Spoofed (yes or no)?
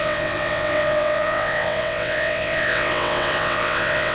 yes